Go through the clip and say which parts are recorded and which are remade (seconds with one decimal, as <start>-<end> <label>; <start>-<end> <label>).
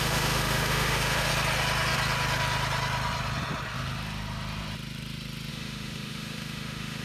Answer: 0.0-1.3 remade; 1.3-5.5 recorded; 5.5-7.0 remade